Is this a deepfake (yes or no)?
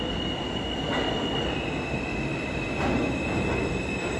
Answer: no